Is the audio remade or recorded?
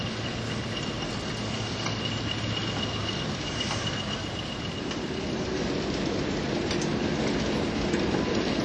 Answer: recorded